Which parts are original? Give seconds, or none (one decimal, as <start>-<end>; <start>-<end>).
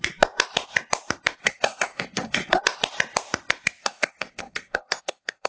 0.0-1.4; 2.6-3.8